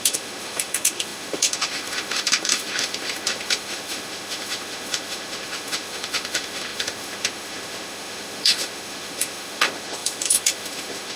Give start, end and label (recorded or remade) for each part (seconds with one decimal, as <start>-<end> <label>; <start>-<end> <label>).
0.0-11.2 remade